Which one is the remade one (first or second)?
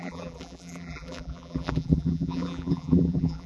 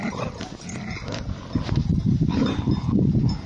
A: first